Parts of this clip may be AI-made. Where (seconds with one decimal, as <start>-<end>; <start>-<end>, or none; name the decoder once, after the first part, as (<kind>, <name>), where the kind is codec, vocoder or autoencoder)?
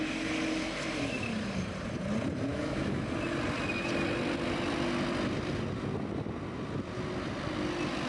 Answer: 2.5-3.0 (autoencoder, DAC-VAE)